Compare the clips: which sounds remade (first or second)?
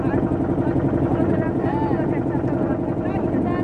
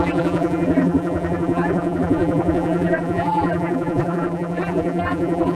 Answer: second